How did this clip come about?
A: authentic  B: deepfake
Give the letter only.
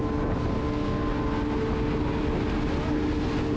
A